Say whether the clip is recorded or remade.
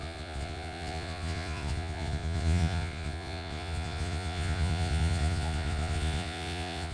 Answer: remade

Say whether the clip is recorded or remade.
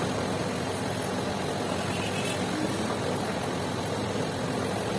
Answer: recorded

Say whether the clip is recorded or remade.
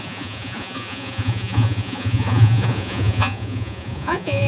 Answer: remade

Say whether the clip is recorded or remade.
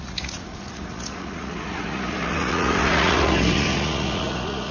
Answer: remade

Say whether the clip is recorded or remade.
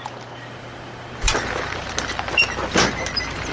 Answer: recorded